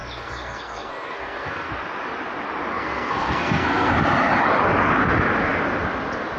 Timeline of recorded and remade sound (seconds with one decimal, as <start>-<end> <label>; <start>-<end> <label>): 0.0-1.7 remade; 1.7-2.7 recorded; 2.7-3.9 remade; 3.9-6.4 recorded